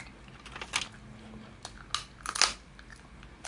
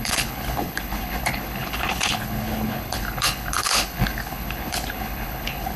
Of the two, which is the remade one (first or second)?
second